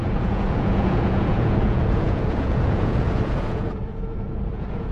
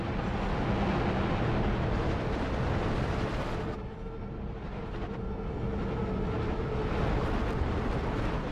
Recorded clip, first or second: second